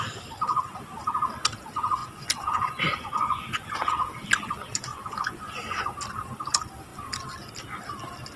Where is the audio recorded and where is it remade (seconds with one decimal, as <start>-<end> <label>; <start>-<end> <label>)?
0.0-2.0 recorded; 2.0-3.9 remade; 3.9-4.9 recorded; 4.9-5.5 remade; 5.5-8.4 recorded